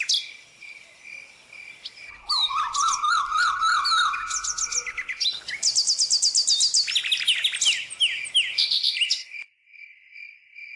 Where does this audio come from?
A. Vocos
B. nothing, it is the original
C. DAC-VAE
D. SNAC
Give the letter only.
B